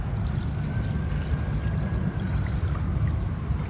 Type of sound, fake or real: fake